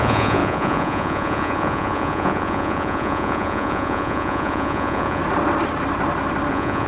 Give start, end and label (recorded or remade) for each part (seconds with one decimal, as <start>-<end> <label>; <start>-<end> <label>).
0.0-5.2 remade; 5.2-6.5 recorded; 6.5-6.9 remade